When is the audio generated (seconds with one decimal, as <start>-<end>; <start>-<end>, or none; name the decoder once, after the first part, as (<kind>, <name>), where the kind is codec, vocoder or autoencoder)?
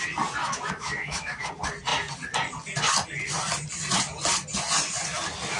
0.4-1.5 (autoencoder, DAC-VAE)